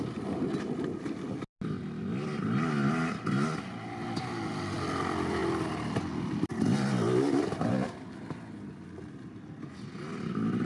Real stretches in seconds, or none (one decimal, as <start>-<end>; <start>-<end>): 0.0-10.7